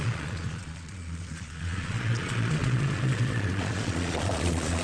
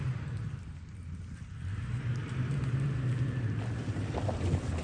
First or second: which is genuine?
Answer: second